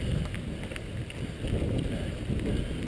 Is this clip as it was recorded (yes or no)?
yes